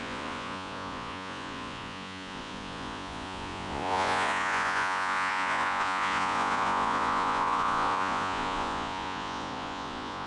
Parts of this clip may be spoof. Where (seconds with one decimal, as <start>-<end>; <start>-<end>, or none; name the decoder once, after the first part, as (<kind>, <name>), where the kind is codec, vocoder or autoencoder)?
0.0-10.3 (vocoder, Vocos)